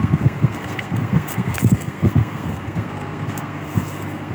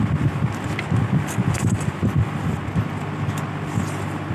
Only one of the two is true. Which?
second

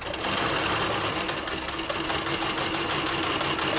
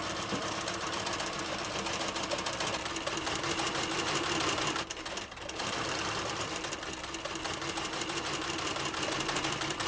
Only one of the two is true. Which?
first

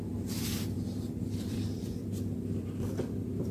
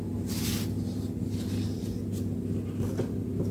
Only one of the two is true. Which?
second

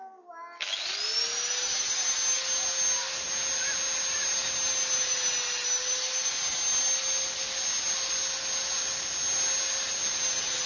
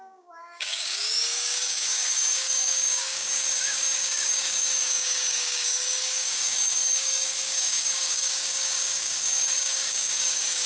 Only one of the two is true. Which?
first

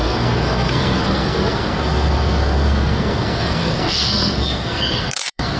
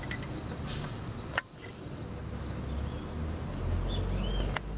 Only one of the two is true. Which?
second